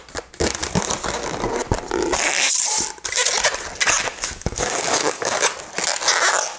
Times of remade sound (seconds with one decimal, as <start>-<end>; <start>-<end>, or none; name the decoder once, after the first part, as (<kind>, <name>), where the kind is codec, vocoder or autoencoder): 4.1-5.5 (codec, DAC)